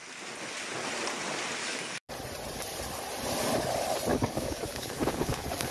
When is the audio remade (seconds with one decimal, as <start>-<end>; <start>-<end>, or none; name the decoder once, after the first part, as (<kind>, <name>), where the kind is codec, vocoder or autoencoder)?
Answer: 1.6-2.1 (codec, DAC); 4.1-5.7